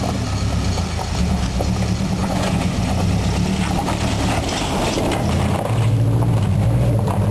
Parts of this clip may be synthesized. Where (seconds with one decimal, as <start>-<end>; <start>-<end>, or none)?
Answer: 2.2-3.1